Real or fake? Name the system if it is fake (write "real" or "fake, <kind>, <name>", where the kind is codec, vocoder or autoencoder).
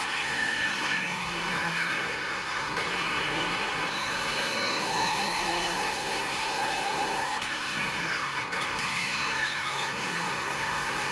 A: fake, codec, SNAC